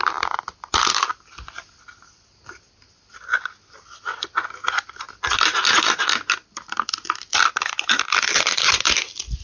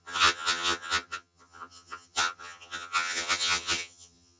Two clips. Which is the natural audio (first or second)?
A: first